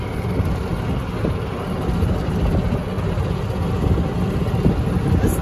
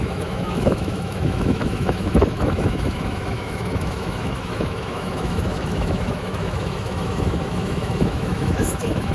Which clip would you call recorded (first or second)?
first